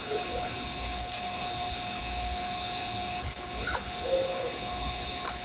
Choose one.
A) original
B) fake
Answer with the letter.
B